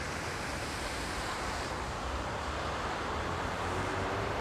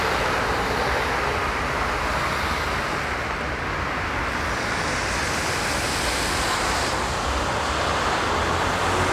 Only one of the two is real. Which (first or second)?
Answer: second